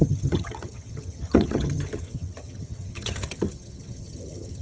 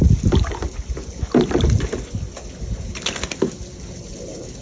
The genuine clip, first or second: second